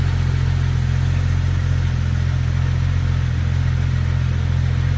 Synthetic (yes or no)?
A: no